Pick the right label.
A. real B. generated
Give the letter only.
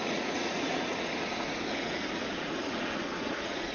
B